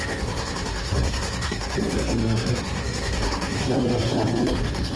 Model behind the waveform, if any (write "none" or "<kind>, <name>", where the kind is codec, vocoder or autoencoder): codec, SNAC